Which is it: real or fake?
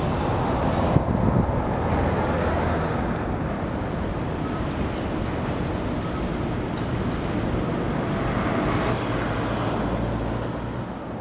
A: real